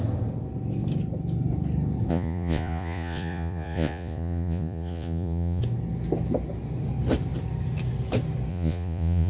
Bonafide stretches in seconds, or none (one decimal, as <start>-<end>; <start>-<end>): 0.0-2.1; 5.6-8.5